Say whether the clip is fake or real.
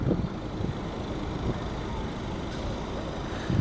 real